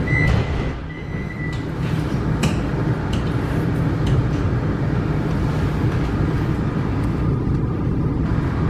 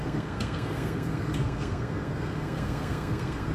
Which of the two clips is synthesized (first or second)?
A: second